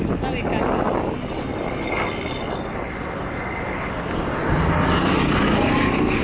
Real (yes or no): yes